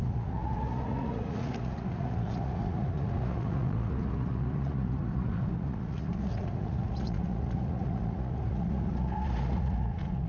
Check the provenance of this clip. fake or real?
fake